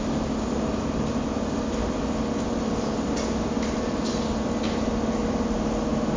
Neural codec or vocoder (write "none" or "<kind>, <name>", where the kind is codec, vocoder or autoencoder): none